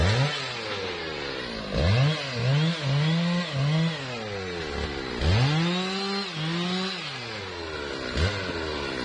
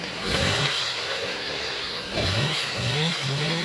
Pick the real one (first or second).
first